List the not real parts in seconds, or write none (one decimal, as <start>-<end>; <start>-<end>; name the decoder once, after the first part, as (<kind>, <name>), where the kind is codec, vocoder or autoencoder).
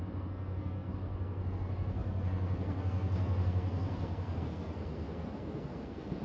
0.0-6.2 (codec, SNAC)